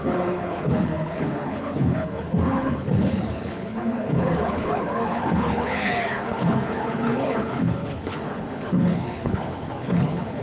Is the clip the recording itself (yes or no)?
no